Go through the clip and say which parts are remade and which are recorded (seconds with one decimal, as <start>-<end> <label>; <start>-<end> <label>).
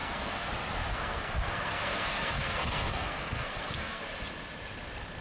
0.0-0.5 remade; 0.5-0.9 recorded; 0.9-4.0 remade; 4.0-5.2 recorded